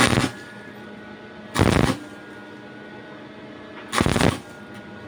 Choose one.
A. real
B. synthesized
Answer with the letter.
A